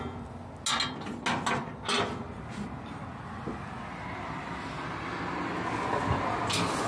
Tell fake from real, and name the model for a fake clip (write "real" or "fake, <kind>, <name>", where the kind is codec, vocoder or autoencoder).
real